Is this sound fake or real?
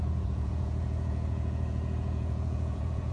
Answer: fake